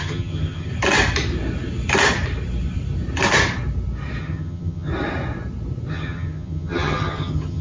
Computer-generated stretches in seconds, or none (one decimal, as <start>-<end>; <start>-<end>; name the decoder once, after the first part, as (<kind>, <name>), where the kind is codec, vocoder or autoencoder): 0.0-0.7 (vocoder, HiFi-GAN); 4.2-4.9; 5.9-7.6